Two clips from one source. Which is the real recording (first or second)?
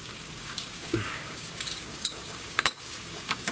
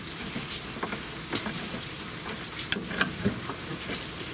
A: second